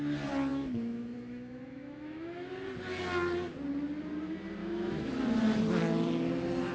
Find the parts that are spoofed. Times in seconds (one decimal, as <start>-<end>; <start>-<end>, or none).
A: 0.5-2.5; 4.6-5.1